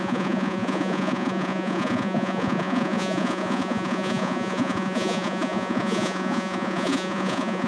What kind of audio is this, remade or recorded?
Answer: remade